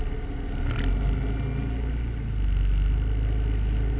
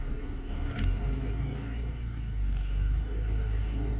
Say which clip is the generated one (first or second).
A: second